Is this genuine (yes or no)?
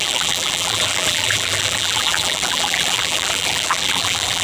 no